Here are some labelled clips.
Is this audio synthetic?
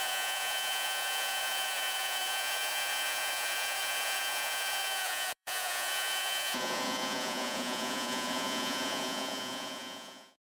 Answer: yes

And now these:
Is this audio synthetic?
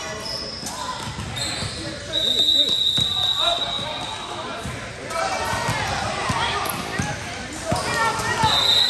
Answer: no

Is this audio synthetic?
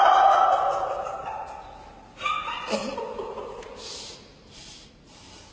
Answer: no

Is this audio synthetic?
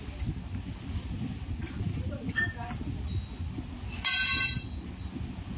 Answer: no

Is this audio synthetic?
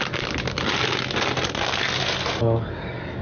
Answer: no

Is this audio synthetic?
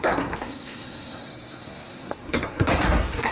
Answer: yes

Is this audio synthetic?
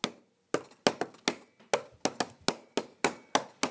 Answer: no